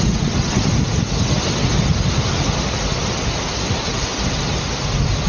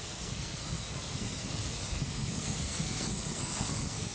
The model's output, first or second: second